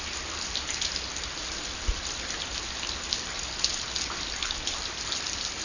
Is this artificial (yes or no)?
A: no